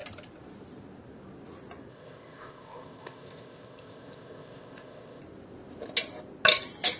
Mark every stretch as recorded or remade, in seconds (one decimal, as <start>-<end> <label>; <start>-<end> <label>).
0.0-1.9 recorded; 1.9-5.2 remade; 5.2-7.0 recorded